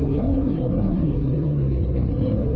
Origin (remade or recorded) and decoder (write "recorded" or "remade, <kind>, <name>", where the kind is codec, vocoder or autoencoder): remade, codec, SNAC